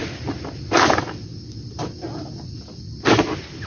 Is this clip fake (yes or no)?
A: no